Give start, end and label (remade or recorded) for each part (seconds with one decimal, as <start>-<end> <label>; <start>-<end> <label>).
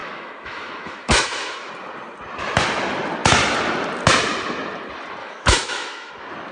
0.0-1.7 remade; 1.7-5.2 recorded; 5.2-6.1 remade; 6.1-6.5 recorded